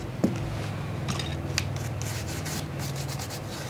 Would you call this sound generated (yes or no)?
no